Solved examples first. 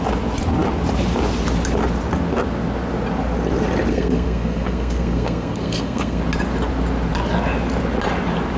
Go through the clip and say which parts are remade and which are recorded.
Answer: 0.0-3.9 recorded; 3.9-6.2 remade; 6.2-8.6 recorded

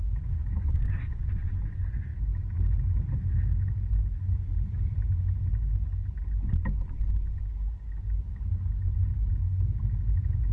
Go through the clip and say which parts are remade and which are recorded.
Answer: 0.0-0.4 recorded; 0.4-1.2 remade; 1.2-8.5 recorded; 8.5-9.3 remade; 9.3-10.5 recorded

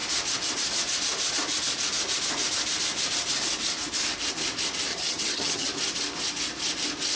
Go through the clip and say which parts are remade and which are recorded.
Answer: 0.0-4.9 recorded; 4.9-5.7 remade; 5.7-7.2 recorded